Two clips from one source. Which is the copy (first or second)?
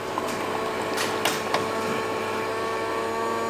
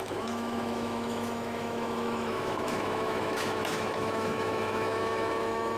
second